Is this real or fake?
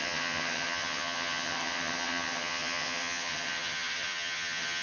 fake